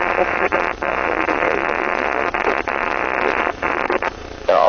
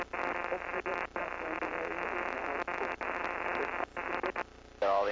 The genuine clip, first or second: second